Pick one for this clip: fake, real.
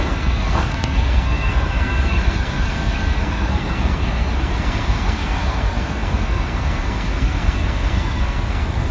fake